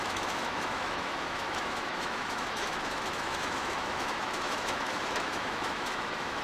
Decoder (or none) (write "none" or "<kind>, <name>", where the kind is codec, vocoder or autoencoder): autoencoder, DAC-VAE